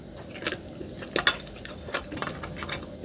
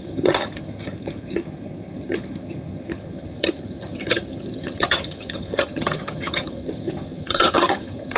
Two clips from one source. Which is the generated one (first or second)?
second